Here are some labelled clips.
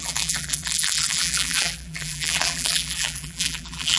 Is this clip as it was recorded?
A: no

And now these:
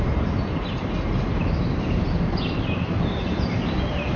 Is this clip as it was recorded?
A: no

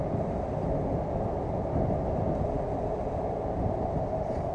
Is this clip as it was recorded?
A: yes